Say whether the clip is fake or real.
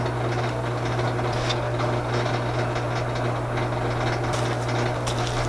real